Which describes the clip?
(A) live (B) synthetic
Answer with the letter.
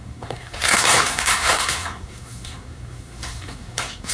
B